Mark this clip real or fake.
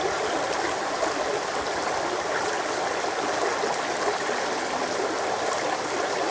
real